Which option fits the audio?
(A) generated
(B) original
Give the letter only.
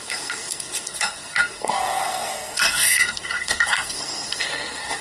A